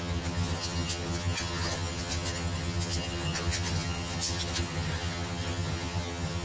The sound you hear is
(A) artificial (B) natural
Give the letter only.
A